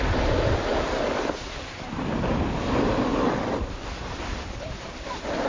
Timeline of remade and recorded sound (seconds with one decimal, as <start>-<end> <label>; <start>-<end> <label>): 0.0-5.5 recorded